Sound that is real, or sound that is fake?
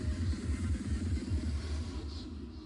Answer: real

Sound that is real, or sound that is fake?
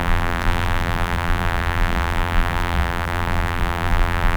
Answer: fake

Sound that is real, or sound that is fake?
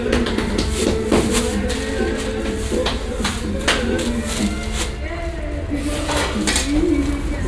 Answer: real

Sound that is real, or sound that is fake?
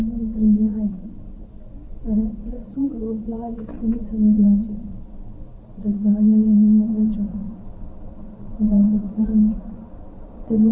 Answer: fake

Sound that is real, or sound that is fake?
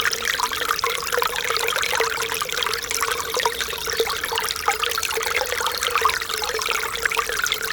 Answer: real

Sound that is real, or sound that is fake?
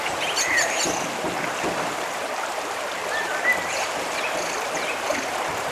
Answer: real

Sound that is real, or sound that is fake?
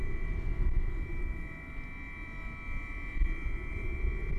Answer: real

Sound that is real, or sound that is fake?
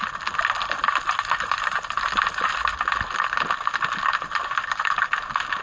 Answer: real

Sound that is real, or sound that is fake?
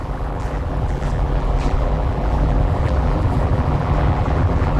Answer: fake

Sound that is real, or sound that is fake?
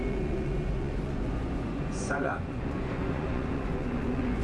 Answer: fake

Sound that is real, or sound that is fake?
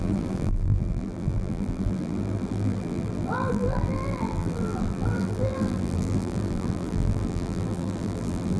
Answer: fake